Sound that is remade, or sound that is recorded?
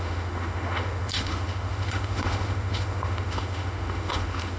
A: remade